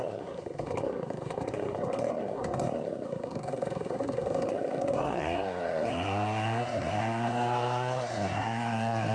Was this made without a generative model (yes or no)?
no